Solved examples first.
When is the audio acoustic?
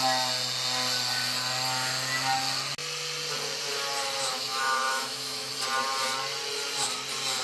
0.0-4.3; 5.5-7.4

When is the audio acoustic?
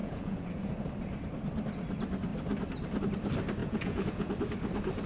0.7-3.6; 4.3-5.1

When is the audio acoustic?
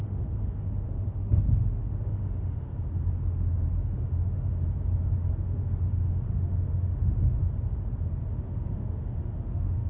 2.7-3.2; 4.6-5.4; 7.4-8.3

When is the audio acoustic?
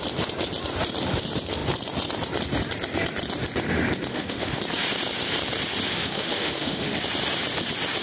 0.0-4.1; 4.6-5.9; 7.0-8.0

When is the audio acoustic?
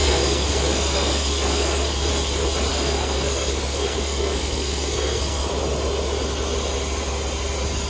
2.1-2.7; 5.5-7.9